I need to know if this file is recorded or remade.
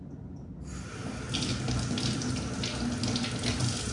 recorded